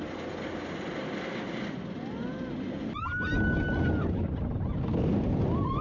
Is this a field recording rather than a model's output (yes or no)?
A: yes